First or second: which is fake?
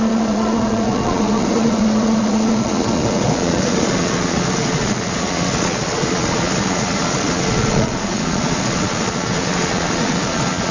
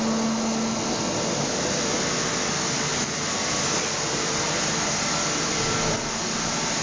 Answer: first